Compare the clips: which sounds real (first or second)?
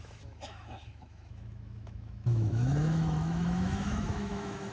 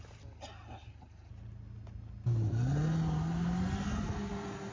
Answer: second